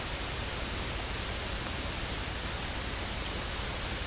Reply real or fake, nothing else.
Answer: real